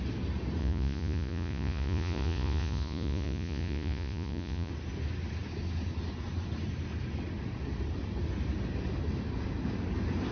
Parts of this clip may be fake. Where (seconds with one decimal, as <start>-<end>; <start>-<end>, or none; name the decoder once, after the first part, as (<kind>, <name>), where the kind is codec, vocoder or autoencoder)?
0.6-4.7 (vocoder, Vocos)